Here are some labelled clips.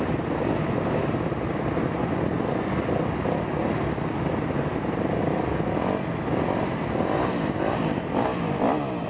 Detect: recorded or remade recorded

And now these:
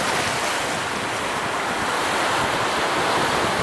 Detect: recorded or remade recorded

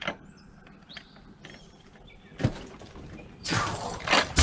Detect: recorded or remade recorded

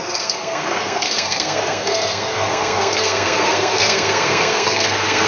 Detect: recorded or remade remade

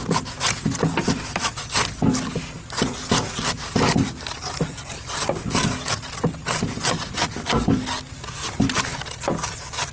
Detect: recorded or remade recorded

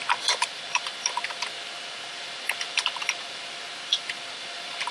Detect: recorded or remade recorded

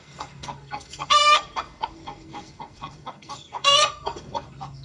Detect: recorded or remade remade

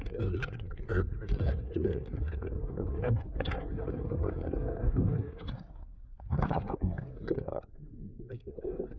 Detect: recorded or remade remade